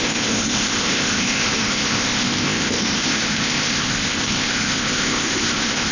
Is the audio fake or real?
fake